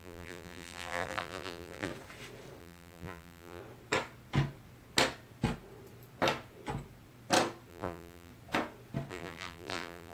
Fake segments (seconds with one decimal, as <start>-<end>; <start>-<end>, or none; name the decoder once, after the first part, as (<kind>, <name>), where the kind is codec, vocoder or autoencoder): 0.0-1.9 (vocoder, BigVGAN v2); 2.6-3.6; 7.7-8.3; 9.1-10.1